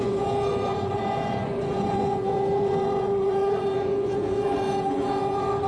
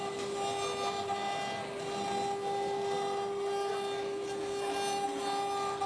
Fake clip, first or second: first